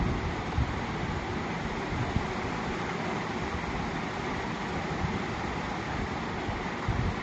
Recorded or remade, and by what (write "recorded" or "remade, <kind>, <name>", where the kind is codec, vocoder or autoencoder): recorded